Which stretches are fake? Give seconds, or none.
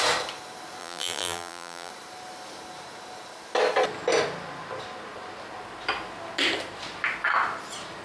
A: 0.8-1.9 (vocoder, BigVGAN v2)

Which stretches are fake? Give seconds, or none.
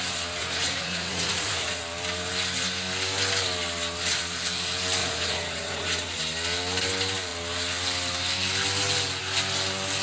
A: 0.4-1.8 (vocoder, Vocos); 5.0-6.2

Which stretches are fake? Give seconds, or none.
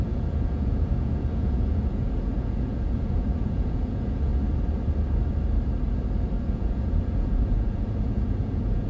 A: 0.0-4.3 (vocoder, Vocos); 6.4-8.9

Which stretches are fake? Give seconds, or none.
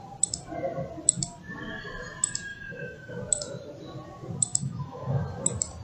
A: 2.5-3.1 (autoencoder, DAC-VAE); 4.5-5.2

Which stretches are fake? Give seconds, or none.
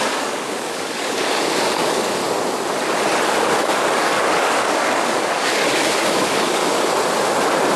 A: 0.0-2.2 (codec, DAC); 3.4-6.6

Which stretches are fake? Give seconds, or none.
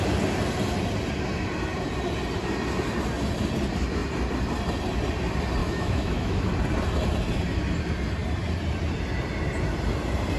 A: 5.6-6.5 (autoencoder, DAC-VAE)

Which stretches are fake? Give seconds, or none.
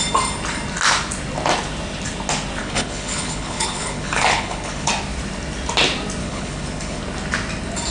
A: 2.6-4.9 (codec, HILCodec); 6.2-7.0